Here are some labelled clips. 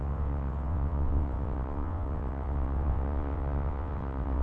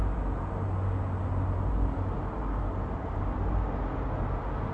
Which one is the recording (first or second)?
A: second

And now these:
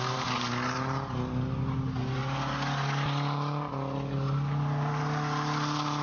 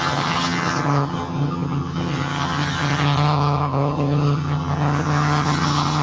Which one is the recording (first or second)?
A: first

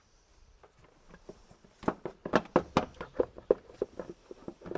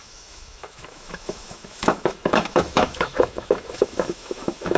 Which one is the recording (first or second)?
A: first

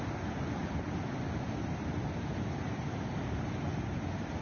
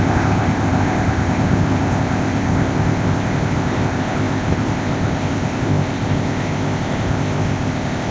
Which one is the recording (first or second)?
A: first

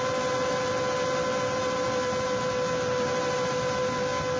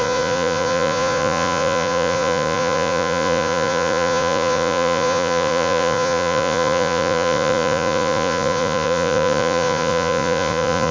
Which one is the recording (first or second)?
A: first